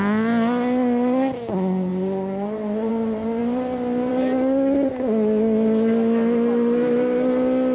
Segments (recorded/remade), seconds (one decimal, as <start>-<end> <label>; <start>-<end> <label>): 0.0-7.7 recorded